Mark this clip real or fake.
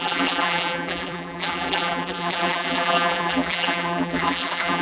fake